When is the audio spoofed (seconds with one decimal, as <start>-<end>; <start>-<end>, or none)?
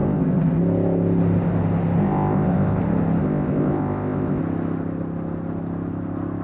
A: 0.0-0.6; 2.0-2.8; 3.2-4.4